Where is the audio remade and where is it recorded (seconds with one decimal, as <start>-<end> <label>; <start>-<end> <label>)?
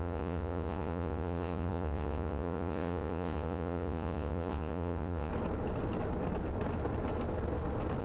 0.0-5.3 remade; 5.3-8.0 recorded